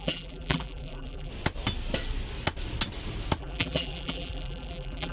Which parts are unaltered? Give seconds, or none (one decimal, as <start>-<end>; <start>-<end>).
1.3-3.4